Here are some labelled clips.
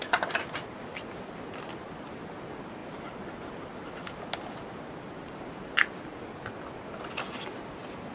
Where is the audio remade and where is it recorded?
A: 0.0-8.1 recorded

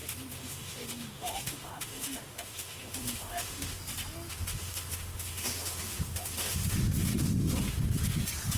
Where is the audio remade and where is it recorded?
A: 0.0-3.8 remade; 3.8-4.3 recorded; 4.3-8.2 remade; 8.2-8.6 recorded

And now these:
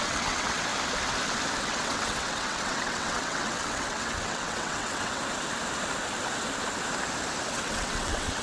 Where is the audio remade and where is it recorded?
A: 0.0-0.7 remade; 0.7-1.6 recorded; 1.6-5.2 remade; 5.2-7.5 recorded; 7.5-8.4 remade

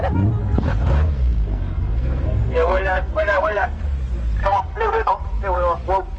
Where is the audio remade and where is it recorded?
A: 0.0-0.4 recorded; 0.4-3.8 remade; 3.8-4.4 recorded; 4.4-5.1 remade; 5.1-6.2 recorded

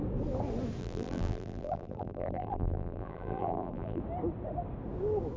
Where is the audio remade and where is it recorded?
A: 0.0-0.8 recorded; 0.8-4.0 remade; 4.0-5.4 recorded

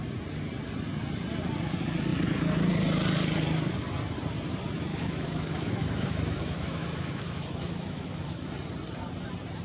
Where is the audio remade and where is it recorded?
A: 0.0-4.9 recorded; 4.9-8.5 remade; 8.5-9.6 recorded

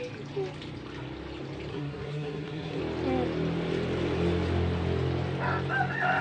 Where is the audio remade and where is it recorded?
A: 0.0-1.7 recorded; 1.7-2.8 remade; 2.8-6.2 recorded

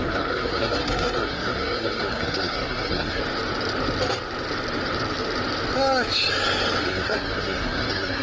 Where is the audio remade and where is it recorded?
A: 0.0-3.2 remade; 3.2-6.8 recorded; 6.8-8.2 remade